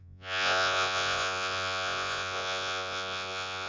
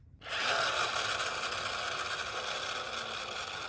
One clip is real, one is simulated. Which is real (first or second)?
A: second